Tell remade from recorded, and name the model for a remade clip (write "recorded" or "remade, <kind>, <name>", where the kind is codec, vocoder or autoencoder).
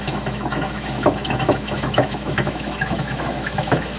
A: remade, autoencoder, DAC-VAE